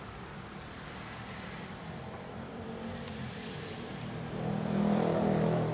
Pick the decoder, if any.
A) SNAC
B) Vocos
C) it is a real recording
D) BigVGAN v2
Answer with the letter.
D